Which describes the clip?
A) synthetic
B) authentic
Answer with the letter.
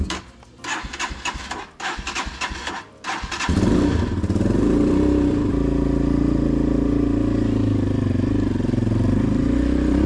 B